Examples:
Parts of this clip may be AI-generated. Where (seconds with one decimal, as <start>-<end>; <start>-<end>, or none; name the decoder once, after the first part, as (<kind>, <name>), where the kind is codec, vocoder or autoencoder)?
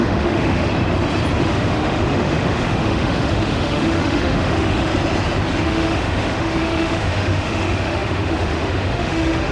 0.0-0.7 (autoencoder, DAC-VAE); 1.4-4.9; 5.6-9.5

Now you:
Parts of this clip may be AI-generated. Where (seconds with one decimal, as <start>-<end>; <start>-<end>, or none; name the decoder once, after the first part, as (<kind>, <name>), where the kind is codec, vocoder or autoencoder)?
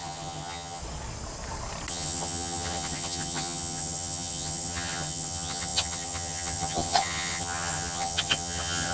0.0-0.8 (vocoder, HiFi-GAN); 1.9-8.9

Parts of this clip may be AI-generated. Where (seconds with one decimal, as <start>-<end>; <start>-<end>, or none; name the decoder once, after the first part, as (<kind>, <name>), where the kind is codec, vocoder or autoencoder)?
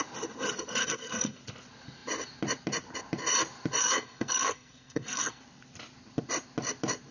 0.8-1.4 (codec, SNAC); 3.8-5.4